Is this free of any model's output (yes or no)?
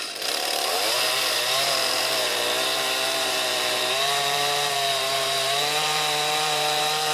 no